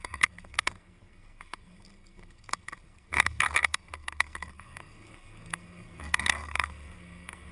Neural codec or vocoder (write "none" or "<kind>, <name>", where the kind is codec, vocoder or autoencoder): codec, SNAC